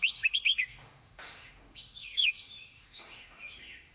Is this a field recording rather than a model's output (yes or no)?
no